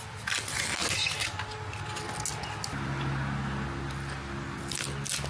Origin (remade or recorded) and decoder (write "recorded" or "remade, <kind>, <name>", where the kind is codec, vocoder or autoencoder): recorded